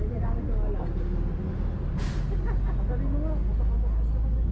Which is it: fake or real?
real